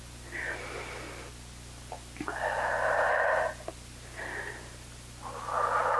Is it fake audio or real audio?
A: real